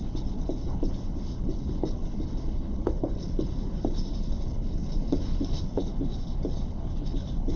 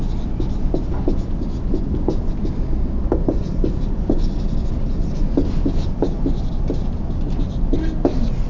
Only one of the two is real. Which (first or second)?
second